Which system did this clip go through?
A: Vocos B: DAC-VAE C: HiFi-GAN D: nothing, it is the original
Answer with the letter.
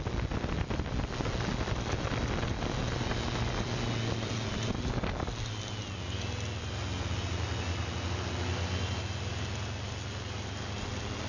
D